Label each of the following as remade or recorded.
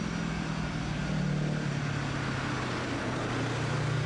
recorded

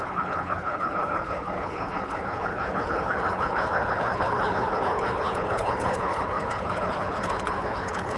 remade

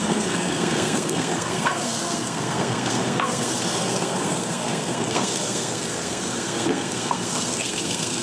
remade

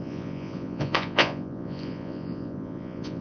remade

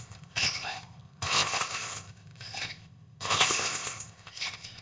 remade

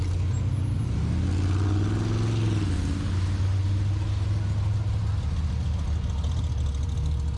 recorded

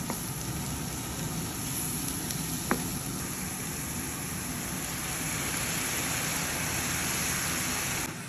recorded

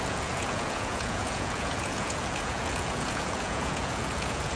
remade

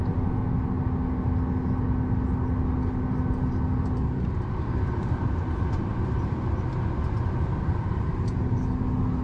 recorded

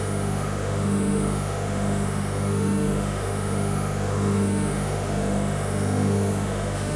remade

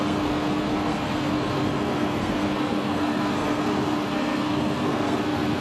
remade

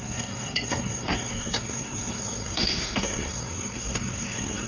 remade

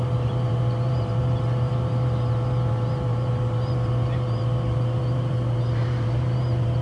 remade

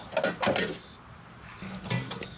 recorded